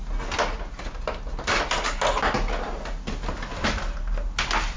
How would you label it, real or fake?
real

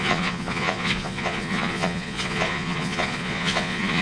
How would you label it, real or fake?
fake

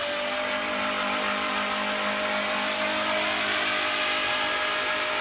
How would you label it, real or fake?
real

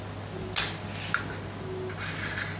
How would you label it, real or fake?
real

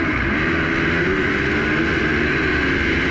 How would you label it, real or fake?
real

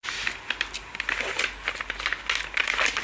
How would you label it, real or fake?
real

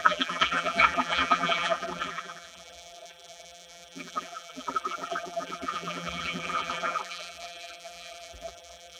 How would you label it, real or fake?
fake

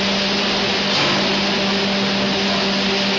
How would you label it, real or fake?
real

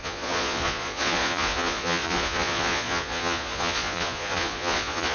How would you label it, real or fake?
fake